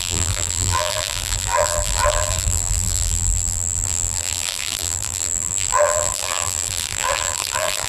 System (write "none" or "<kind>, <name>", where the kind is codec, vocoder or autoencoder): vocoder, BigVGAN v2